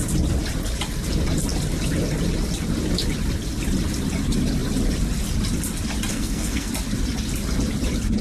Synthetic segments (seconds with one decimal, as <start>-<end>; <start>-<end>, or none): 6.1-6.7